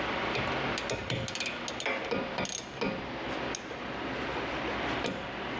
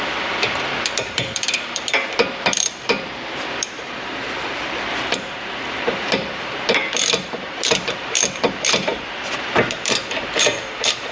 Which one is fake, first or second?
second